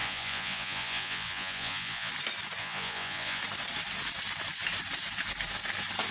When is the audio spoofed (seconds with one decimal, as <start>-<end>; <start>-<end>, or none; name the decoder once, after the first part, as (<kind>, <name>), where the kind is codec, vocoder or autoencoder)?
0.0-2.1 (vocoder, Vocos); 2.6-3.4